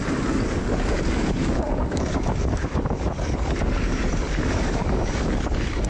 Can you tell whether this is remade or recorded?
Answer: remade